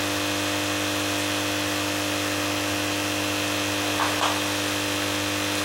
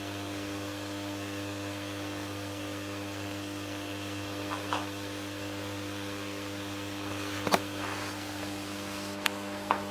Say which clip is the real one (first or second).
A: first